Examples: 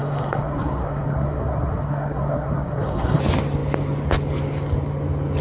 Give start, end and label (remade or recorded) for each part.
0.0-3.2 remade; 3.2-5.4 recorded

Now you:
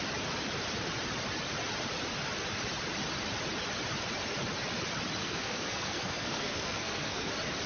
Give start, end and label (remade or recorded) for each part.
0.0-5.2 recorded; 5.2-7.3 remade; 7.3-7.7 recorded

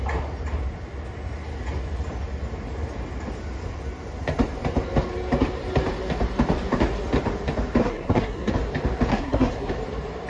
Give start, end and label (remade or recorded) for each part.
0.0-7.8 recorded; 7.8-8.5 remade; 8.5-9.1 recorded; 9.1-9.7 remade; 9.7-10.3 recorded

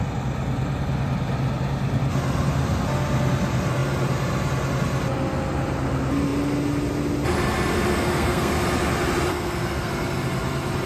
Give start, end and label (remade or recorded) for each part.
0.0-7.9 recorded; 7.9-8.5 remade; 8.5-9.3 recorded; 9.3-9.9 remade; 9.9-10.9 recorded

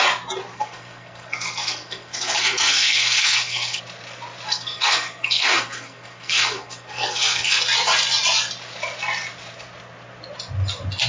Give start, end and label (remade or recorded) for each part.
0.0-0.5 recorded; 0.5-3.8 remade; 3.8-4.5 recorded; 4.5-7.6 remade; 7.6-11.1 recorded

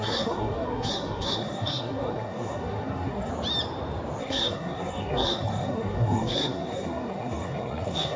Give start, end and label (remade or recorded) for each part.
0.0-3.3 remade; 3.3-4.2 recorded; 4.2-8.2 remade

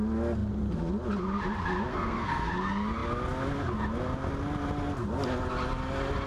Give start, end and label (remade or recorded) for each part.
0.0-1.9 recorded; 1.9-2.5 remade; 2.5-6.3 recorded